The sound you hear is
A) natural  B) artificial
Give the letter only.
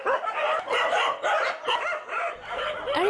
A